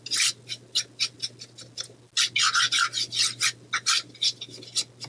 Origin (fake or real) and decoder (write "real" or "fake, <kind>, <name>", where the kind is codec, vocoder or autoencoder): real